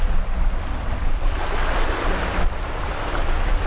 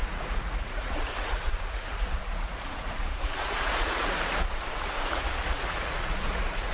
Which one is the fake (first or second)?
second